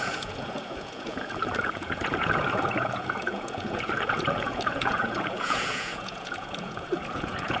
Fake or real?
fake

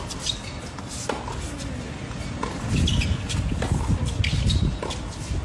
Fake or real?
real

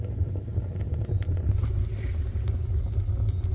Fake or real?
real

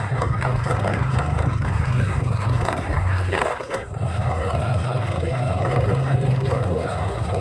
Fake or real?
fake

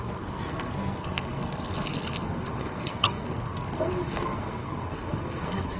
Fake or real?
fake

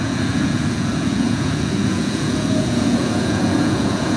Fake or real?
fake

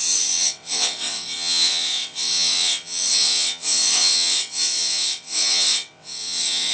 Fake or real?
fake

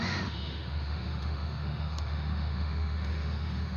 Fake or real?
fake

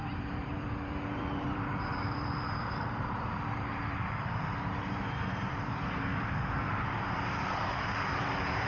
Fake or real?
fake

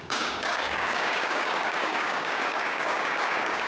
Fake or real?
fake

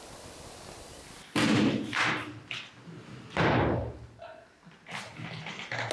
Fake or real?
real